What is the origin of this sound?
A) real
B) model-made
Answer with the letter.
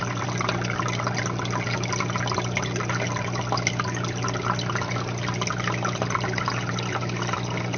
A